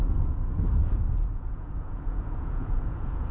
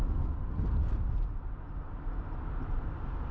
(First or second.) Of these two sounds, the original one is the second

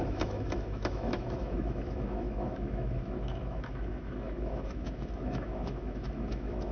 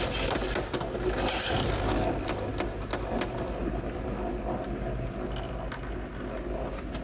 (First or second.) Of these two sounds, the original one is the second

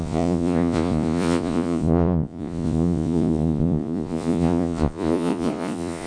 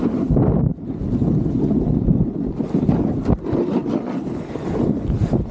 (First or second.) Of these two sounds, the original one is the second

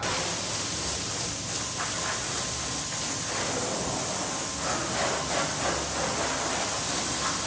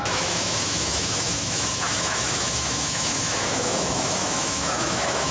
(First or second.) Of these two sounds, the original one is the first